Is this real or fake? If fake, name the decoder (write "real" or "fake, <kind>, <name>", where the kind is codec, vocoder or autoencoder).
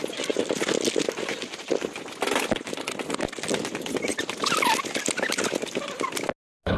real